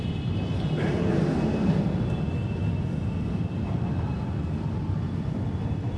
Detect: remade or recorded recorded